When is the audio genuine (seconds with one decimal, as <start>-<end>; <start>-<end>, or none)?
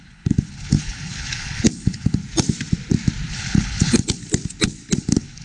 2.2-3.3; 4.2-5.0